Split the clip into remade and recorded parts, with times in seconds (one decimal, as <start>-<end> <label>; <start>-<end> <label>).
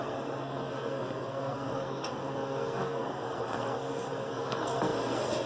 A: 0.0-5.5 remade